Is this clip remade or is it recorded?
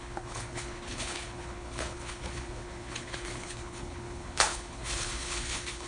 remade